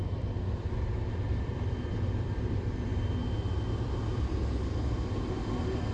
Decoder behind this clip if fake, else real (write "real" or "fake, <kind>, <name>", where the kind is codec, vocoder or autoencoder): fake, vocoder, BigVGAN v2